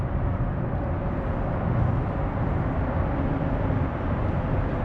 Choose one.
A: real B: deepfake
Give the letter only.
A